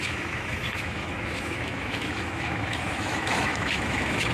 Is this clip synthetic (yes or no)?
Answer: yes